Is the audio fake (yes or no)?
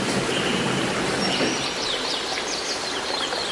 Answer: no